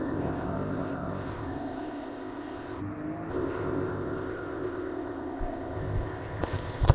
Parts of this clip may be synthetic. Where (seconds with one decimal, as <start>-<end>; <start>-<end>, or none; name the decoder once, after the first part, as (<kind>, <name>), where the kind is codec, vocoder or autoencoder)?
0.0-2.8 (codec, ZipCodec); 3.3-6.9

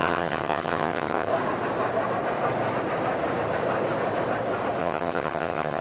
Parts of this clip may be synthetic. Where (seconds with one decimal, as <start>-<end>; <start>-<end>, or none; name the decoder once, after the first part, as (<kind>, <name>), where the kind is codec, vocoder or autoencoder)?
0.0-1.3 (vocoder, HiFi-GAN); 4.8-5.8

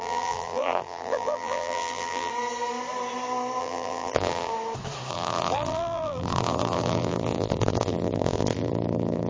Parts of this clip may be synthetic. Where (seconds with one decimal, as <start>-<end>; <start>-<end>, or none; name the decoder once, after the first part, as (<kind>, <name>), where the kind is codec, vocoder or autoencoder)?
0.0-2.3 (vocoder, BigVGAN v2); 3.6-4.5; 5.1-9.3

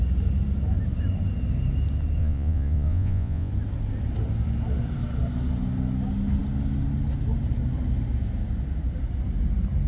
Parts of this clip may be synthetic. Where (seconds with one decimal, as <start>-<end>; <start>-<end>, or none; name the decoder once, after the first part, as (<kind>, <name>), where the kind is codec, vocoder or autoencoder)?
2.2-3.5 (vocoder, Vocos)

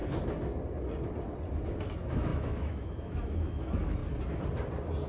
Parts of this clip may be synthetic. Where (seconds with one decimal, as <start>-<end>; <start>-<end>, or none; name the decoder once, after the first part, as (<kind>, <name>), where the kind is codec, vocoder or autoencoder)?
1.8-4.0 (autoencoder, DAC-VAE)

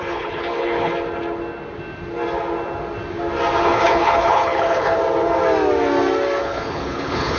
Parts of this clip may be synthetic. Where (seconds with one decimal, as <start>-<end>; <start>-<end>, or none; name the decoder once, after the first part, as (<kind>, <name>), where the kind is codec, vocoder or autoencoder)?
0.0-0.9 (codec, HILCodec); 3.6-5.0; 6.4-7.4

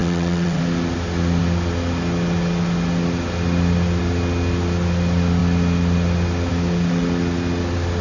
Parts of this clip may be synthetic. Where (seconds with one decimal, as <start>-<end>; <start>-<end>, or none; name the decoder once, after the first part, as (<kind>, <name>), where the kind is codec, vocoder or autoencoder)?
0.0-0.6 (vocoder, WaveNeXt)

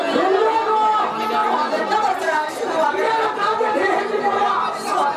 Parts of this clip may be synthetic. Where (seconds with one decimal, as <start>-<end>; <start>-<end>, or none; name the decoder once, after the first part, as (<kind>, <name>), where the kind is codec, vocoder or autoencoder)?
1.4-4.2 (vocoder, BigVGAN v2)